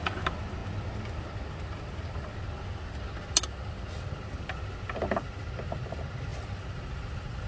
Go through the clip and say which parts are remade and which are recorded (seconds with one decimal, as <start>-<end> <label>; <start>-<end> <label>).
0.0-7.5 recorded